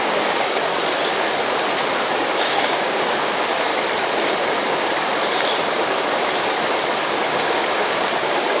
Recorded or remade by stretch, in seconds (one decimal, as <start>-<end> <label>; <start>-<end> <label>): 0.0-0.7 remade; 0.7-2.4 recorded; 2.4-3.7 remade; 3.7-7.3 recorded; 7.3-8.6 remade